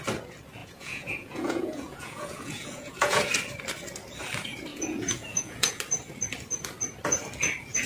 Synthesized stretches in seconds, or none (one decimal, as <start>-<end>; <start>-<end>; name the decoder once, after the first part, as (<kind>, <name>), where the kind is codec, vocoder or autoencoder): 0.6-3.3 (vocoder, Vocos); 4.7-5.8